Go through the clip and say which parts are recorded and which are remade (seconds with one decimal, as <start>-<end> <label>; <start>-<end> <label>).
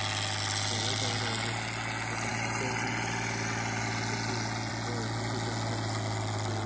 0.0-6.7 recorded